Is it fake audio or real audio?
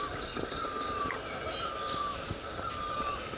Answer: real